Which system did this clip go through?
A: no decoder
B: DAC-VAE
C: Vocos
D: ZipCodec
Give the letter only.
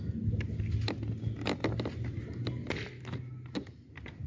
A